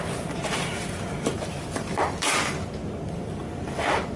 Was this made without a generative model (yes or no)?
no